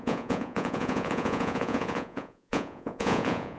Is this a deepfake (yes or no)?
yes